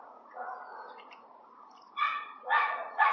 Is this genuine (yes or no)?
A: no